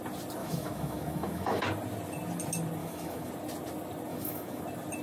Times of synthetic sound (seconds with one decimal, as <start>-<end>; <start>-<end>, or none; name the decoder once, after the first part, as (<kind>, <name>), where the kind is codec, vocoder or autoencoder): 0.4-1.6 (autoencoder, DAC-VAE); 2.8-3.3; 4.1-4.6